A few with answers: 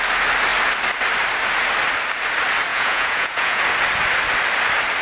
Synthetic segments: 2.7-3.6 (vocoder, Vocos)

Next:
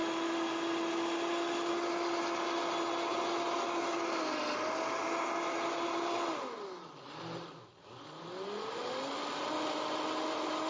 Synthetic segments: none

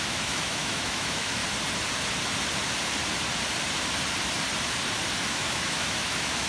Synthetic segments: 0.0-1.4 (autoencoder, DAC-VAE); 5.3-6.5

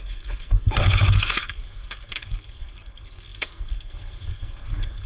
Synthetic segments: 0.0-5.1 (codec, SNAC)

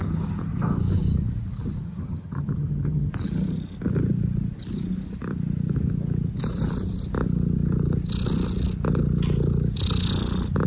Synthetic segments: 1.8-3.1 (vocoder, HiFi-GAN)

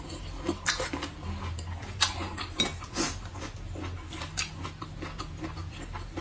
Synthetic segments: none

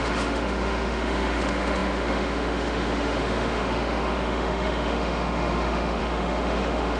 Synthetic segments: 0.0-7.0 (autoencoder, DAC-VAE)